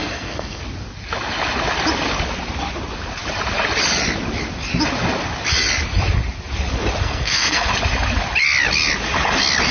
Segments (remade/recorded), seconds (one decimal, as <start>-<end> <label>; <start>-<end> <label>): 0.0-0.6 remade; 0.6-7.0 recorded; 7.0-7.7 remade; 7.7-9.7 recorded